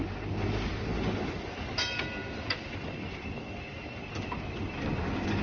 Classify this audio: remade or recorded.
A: recorded